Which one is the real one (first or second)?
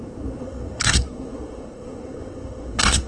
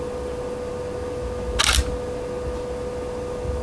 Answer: second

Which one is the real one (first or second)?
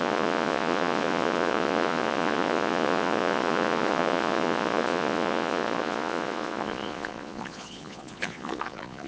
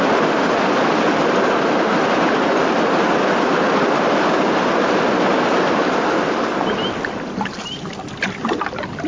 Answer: second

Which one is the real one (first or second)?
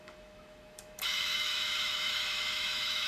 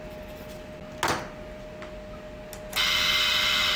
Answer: second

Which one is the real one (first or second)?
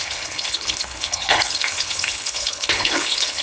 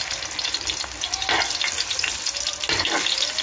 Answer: second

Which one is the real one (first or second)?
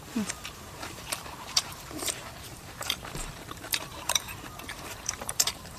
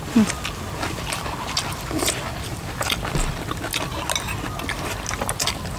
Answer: second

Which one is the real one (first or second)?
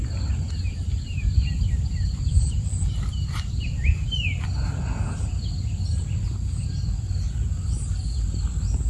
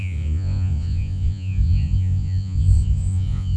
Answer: first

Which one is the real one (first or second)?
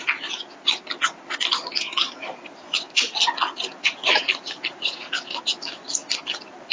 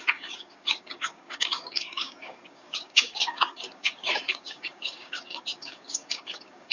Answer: first